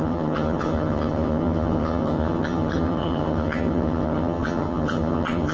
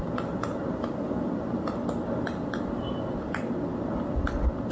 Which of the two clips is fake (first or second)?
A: first